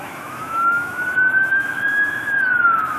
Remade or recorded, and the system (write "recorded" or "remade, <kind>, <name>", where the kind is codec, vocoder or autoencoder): remade, autoencoder, DAC-VAE